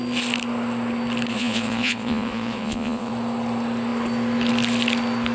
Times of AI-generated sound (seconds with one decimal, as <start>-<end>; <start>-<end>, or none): 1.3-3.1